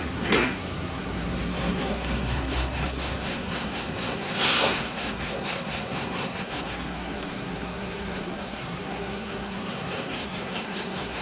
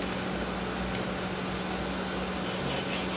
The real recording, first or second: second